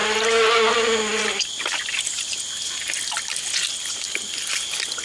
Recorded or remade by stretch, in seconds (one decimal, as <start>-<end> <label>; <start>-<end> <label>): 0.0-5.0 recorded